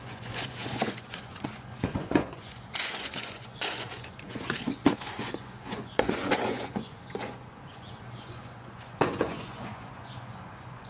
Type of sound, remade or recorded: remade